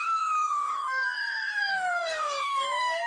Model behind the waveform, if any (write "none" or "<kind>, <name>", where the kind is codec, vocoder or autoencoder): codec, DAC